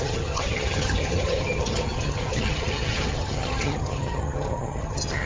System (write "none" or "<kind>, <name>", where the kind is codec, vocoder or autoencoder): vocoder, HiFi-GAN